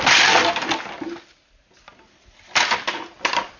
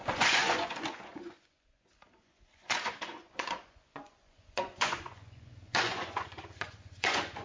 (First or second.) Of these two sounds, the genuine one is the first